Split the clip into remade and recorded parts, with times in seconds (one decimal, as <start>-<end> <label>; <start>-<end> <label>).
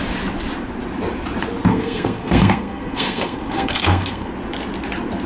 0.0-1.7 recorded; 1.7-4.3 remade; 4.3-5.3 recorded